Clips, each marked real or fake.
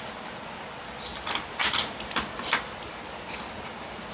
real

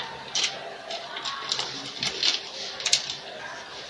real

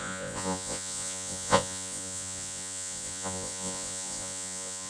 fake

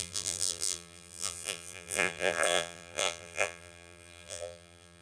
fake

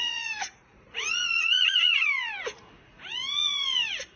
fake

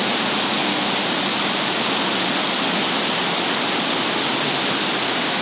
real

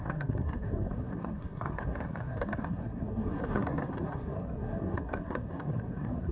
fake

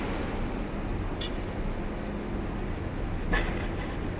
real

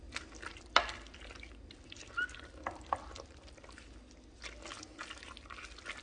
real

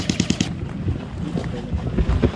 real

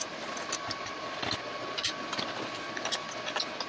real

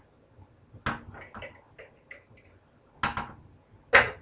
real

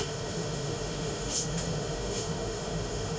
fake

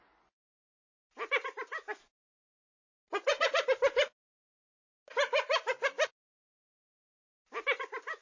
real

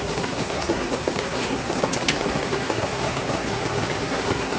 fake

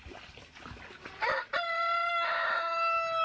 real